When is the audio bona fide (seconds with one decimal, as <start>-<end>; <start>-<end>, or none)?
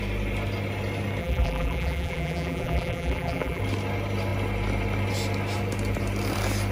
0.0-1.2; 3.6-6.7